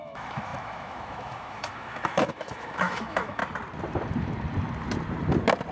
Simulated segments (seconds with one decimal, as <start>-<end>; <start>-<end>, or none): 0.0-3.4